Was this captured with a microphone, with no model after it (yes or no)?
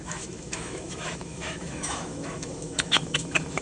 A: no